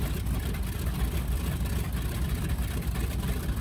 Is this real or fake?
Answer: real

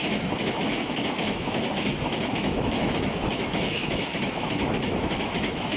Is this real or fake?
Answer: fake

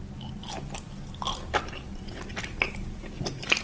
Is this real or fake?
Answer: real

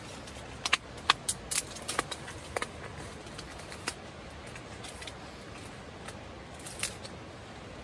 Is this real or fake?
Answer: real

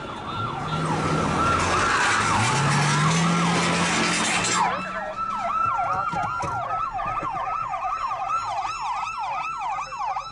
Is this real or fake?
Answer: real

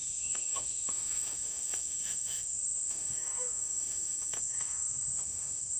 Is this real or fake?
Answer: fake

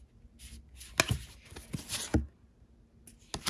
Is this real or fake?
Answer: real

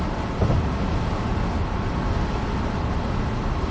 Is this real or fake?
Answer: real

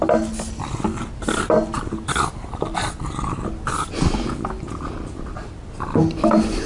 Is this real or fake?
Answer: real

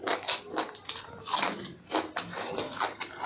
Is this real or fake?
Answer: real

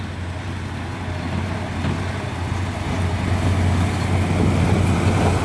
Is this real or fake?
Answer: real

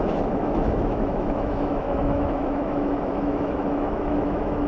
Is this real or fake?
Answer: fake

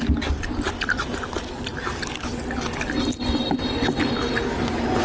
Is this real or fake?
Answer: real